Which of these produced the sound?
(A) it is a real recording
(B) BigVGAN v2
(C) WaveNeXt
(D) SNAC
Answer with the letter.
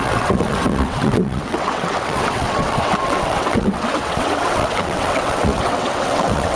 C